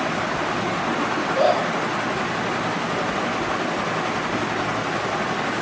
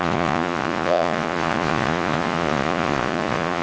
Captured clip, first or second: first